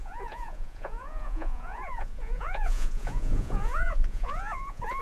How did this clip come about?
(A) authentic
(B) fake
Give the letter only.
B